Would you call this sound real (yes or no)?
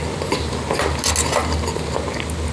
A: yes